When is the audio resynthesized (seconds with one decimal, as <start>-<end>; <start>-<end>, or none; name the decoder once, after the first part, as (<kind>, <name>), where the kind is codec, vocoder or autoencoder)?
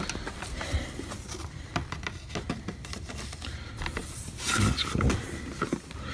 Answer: none